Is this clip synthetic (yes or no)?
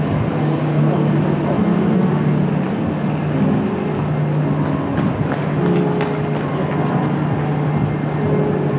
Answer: no